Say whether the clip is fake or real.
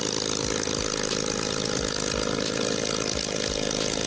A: real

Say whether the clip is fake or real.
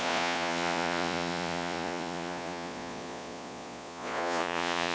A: fake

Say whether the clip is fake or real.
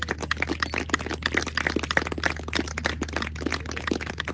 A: real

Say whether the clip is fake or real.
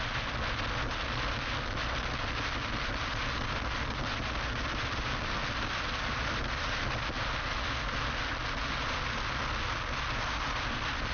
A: real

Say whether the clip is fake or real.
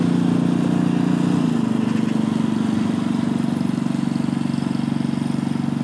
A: real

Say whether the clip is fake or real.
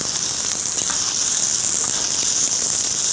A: real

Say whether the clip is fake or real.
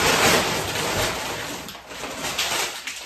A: real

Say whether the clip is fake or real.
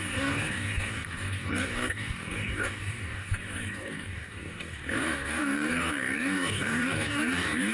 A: fake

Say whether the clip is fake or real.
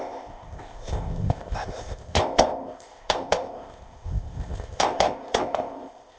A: fake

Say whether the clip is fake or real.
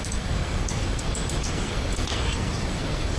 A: fake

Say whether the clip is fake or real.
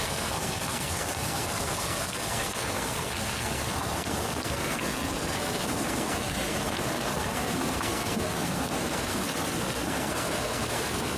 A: fake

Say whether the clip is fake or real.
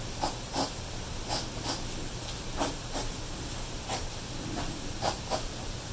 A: real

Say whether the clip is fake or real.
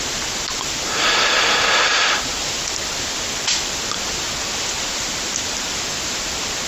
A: real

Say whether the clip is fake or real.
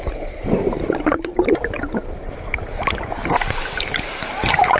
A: fake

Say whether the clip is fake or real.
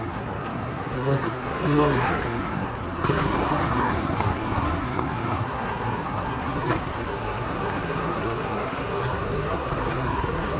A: fake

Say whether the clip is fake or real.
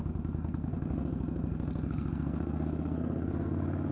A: fake